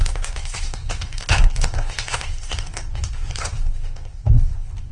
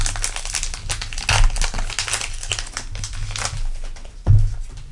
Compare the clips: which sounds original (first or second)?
second